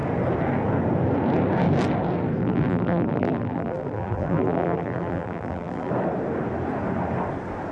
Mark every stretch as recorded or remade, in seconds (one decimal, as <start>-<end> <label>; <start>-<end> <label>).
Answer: 0.0-2.4 recorded; 2.4-5.9 remade; 5.9-7.7 recorded